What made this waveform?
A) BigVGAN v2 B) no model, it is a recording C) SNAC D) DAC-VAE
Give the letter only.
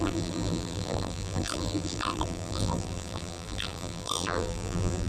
A